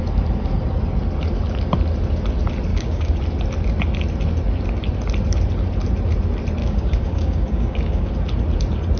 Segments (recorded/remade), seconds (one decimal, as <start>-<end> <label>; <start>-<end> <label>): 0.0-2.7 recorded; 2.7-3.2 remade; 3.2-6.6 recorded; 6.6-8.1 remade; 8.1-9.0 recorded